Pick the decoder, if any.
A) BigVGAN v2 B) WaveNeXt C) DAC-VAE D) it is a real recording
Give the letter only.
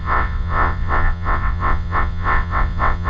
B